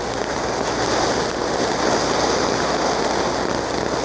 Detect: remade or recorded recorded